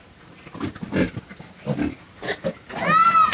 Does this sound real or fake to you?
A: real